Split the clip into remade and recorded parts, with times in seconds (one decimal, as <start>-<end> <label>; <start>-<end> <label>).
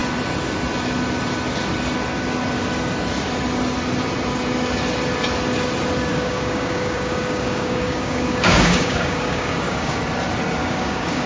0.0-6.1 recorded; 6.1-10.0 remade; 10.0-10.6 recorded; 10.6-11.3 remade